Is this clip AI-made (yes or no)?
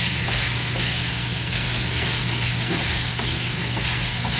yes